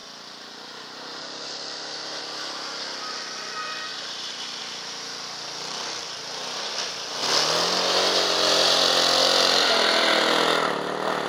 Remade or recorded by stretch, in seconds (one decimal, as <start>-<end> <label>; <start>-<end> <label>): 0.0-2.2 remade; 2.2-3.9 recorded; 3.9-4.6 remade; 4.6-11.3 recorded